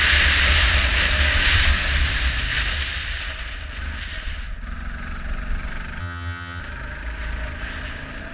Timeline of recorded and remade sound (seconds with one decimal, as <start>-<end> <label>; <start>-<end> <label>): 0.0-6.0 recorded; 6.0-6.6 remade; 6.6-8.3 recorded